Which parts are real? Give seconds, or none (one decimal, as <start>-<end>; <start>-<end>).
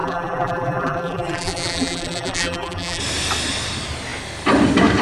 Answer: 3.0-5.0